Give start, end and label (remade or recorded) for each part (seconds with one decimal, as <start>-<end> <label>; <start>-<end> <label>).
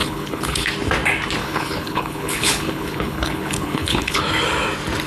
0.0-0.7 remade; 0.7-1.4 recorded; 1.4-4.2 remade; 4.2-5.1 recorded